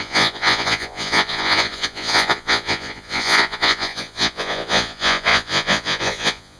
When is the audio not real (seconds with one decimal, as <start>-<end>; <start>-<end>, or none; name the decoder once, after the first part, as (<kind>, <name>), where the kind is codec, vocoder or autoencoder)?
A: 0.0-6.6 (vocoder, Vocos)